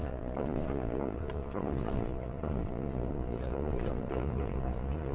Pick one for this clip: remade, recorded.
remade